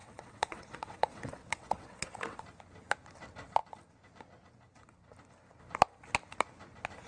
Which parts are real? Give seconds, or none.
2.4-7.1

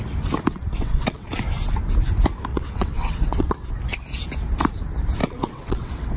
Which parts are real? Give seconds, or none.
0.0-0.5; 1.3-2.5; 3.7-5.2

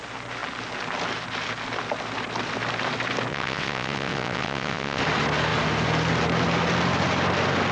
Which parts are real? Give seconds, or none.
0.0-3.3; 5.0-7.7

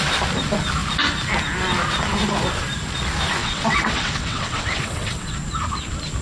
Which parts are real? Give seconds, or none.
0.0-3.4; 5.3-6.2

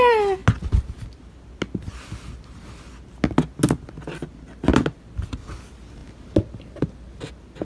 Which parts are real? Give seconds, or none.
0.0-7.6

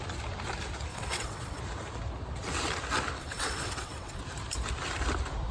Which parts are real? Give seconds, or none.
0.0-0.9; 1.6-3.2; 4.2-5.5